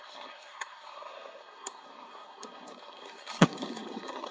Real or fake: fake